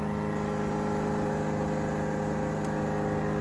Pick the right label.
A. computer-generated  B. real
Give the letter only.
B